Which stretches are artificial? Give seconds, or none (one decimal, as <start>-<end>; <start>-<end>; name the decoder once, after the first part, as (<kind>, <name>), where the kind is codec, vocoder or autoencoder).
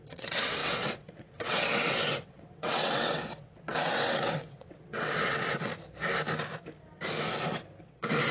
0.0-5.7 (vocoder, WaveNeXt); 7.8-8.3